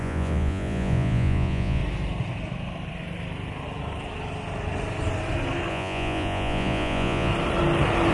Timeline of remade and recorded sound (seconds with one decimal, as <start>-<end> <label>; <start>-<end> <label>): 0.0-1.8 remade; 1.8-5.7 recorded; 5.7-7.3 remade; 7.3-8.1 recorded